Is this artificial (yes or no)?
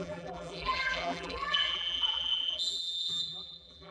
yes